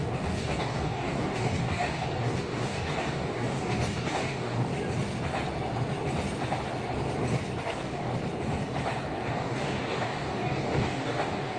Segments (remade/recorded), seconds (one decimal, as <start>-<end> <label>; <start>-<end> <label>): 0.0-4.7 remade; 4.7-7.6 recorded; 7.6-8.1 remade; 8.1-9.1 recorded; 9.1-11.6 remade